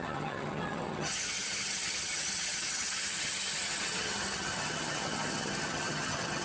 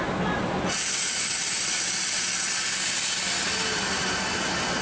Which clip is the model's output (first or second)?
first